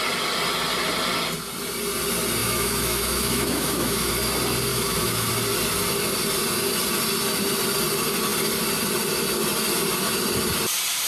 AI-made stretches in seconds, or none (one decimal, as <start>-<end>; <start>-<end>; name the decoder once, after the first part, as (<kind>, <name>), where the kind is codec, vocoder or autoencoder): 2.4-4.1 (autoencoder, DAC-VAE); 4.7-5.3